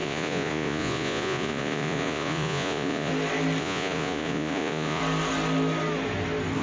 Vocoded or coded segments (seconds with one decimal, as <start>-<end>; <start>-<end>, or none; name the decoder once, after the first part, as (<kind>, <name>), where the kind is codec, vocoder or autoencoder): 0.0-3.1 (vocoder, Vocos); 3.6-5.0